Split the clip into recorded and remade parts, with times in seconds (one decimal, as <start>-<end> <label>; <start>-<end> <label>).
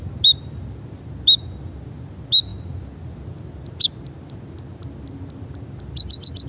0.0-6.5 recorded